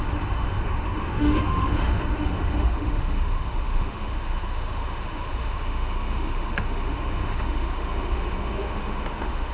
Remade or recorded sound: remade